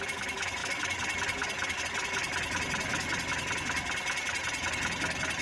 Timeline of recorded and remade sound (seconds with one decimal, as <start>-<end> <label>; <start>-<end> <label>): 0.0-0.6 recorded; 0.6-1.8 remade; 1.8-2.9 recorded; 2.9-4.3 remade; 4.3-5.4 recorded